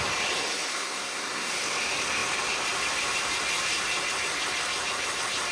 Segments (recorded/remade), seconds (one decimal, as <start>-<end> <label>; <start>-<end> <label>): 0.0-0.7 recorded; 0.7-1.5 remade; 1.5-5.5 recorded